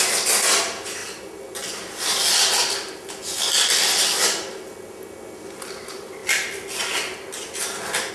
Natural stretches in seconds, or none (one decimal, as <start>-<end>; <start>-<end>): 0.0-8.1